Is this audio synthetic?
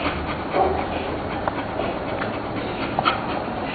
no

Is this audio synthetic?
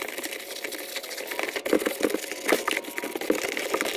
no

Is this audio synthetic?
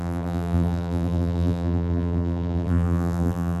yes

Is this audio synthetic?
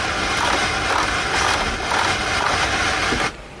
no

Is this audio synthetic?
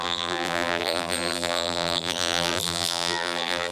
yes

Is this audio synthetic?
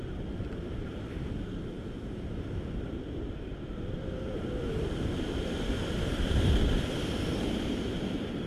yes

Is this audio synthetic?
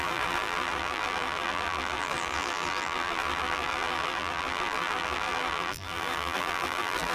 yes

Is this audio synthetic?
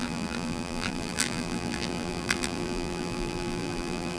yes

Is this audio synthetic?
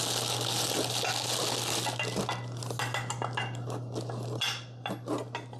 no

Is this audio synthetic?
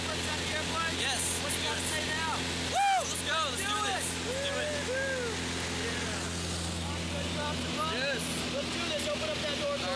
no